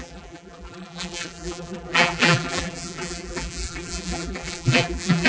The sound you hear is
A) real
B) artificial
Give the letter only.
B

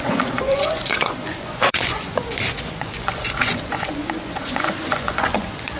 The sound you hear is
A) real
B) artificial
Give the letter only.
B